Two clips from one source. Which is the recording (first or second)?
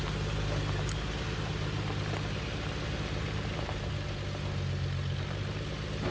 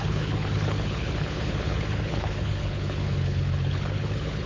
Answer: first